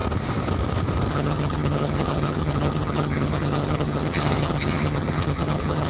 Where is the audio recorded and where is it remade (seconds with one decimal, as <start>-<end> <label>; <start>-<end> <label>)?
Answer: 0.0-1.1 recorded; 1.1-5.9 remade